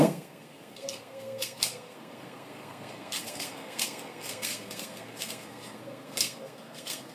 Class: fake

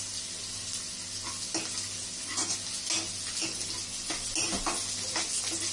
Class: real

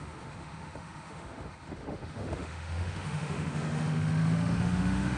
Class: fake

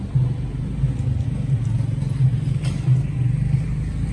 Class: real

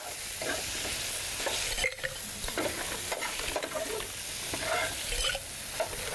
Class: real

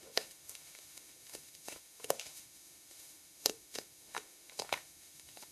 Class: fake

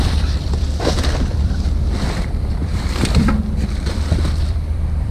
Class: fake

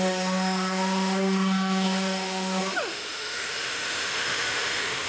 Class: fake